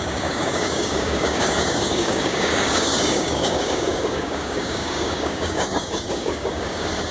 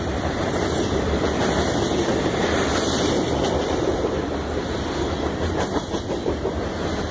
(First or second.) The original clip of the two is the second